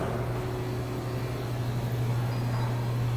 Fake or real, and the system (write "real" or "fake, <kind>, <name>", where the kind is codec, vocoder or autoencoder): real